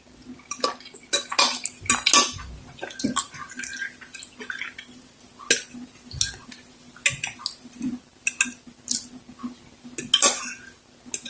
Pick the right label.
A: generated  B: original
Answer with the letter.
B